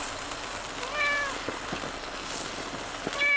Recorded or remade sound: recorded